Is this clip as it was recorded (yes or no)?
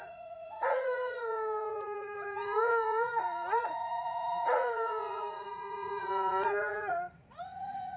no